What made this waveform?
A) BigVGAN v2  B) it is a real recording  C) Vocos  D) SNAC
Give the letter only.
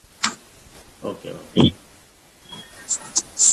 B